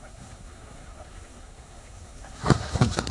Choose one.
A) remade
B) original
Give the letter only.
A